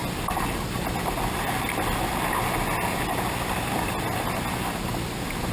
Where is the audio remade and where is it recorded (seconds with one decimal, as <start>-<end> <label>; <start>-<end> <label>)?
0.0-5.5 recorded